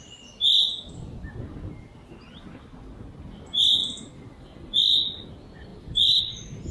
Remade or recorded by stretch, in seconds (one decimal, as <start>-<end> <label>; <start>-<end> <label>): 0.0-3.8 recorded; 3.8-5.3 remade; 5.3-5.7 recorded; 5.7-6.2 remade; 6.2-6.7 recorded